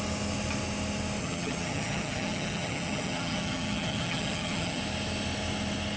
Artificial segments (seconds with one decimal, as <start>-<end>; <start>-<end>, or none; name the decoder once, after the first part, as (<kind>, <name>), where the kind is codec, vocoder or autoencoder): 1.2-4.8 (vocoder, HiFi-GAN)